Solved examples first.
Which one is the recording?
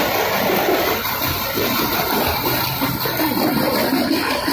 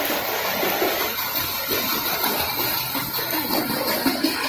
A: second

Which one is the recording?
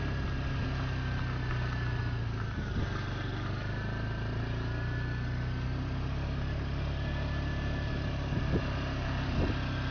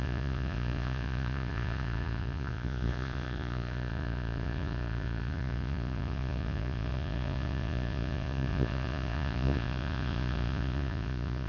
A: first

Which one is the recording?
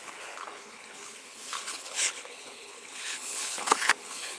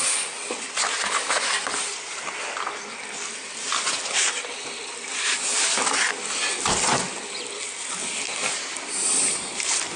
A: second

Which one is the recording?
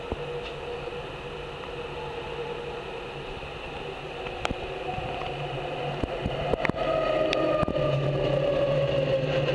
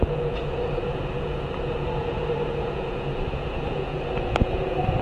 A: first